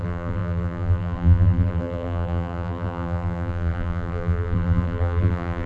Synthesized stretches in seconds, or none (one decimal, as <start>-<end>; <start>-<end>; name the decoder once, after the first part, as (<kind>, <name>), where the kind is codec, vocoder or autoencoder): 0.0-5.7 (vocoder, BigVGAN v2)

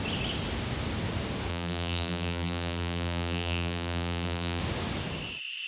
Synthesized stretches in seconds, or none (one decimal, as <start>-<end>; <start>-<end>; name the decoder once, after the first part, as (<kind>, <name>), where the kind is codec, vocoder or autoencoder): 1.5-4.6 (vocoder, BigVGAN v2)

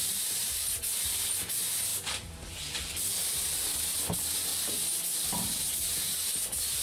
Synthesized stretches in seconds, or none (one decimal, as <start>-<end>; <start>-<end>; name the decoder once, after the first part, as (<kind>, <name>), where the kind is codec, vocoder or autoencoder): 0.0-0.7 (vocoder, BigVGAN v2); 1.9-4.0

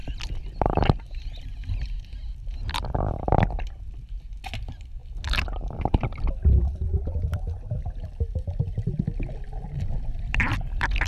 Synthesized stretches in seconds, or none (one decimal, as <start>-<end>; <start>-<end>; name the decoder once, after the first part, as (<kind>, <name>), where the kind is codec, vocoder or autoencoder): 10.1-11.1 (vocoder, BigVGAN v2)

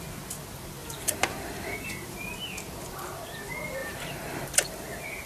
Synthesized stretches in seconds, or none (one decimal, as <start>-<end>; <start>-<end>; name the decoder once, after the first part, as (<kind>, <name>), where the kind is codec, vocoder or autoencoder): 0.8-2.3 (vocoder, BigVGAN v2); 3.8-5.3

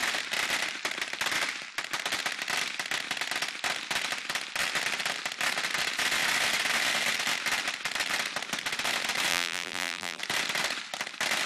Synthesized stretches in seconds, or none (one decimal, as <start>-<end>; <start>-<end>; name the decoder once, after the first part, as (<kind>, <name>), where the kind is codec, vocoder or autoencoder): 9.3-10.2 (vocoder, BigVGAN v2)